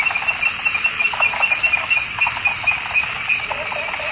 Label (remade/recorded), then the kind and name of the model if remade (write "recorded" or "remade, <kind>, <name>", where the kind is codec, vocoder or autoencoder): recorded